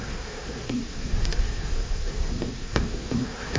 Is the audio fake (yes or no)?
yes